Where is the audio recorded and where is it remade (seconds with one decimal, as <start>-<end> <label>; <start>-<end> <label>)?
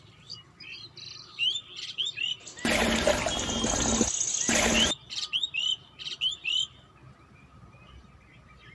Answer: 0.0-8.7 recorded